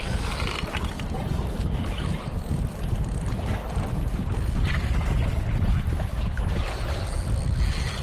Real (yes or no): yes